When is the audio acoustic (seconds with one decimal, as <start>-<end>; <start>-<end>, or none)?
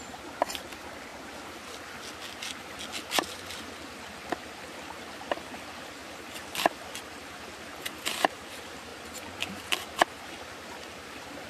0.0-11.5